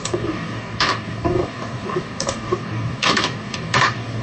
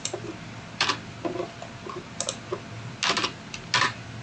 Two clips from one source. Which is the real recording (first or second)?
second